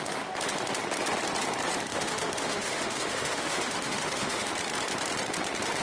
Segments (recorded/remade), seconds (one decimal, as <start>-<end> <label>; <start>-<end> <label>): 0.0-1.9 recorded; 1.9-4.5 remade; 4.5-5.8 recorded